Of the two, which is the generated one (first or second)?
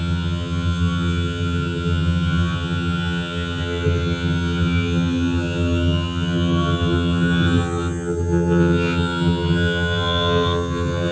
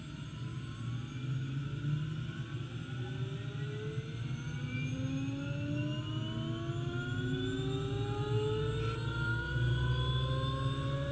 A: first